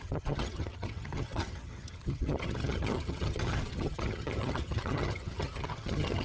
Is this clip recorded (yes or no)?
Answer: no